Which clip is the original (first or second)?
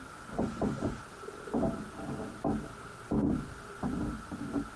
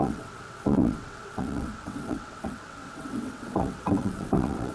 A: first